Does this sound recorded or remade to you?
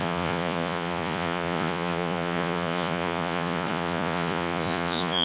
remade